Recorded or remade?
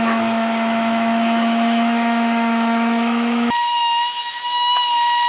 remade